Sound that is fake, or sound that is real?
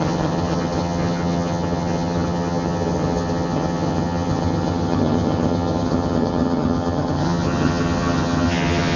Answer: fake